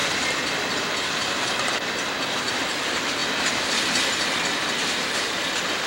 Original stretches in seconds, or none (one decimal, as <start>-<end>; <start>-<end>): 0.0-5.9